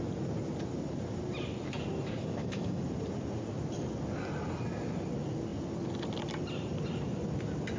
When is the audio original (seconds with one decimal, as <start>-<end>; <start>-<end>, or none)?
0.0-2.2; 2.8-7.8